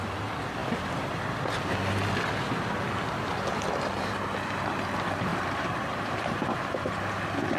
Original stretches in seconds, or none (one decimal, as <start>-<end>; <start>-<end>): 0.0-5.3; 6.3-7.6